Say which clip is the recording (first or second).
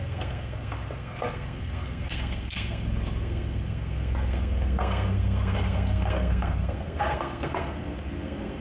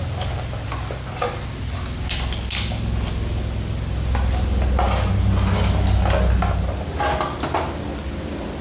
second